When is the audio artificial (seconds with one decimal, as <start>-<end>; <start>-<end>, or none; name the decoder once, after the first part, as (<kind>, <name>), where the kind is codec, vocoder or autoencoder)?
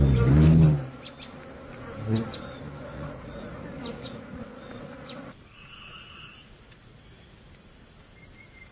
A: 2.9-7.0 (vocoder, Vocos)